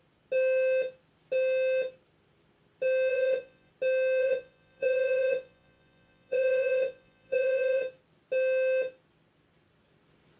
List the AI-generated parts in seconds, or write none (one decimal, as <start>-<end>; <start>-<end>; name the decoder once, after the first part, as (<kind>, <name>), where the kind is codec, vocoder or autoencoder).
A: 3.1-3.7 (vocoder, Vocos); 4.2-7.8